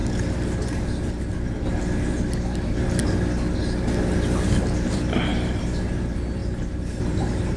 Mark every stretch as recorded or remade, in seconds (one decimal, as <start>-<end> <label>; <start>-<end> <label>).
0.0-5.3 recorded; 5.3-5.9 remade; 5.9-6.4 recorded; 6.4-7.6 remade